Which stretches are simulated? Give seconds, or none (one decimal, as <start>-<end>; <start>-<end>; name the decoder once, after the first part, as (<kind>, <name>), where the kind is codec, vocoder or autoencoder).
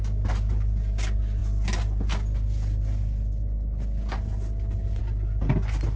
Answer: none